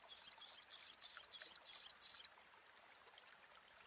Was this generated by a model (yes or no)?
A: no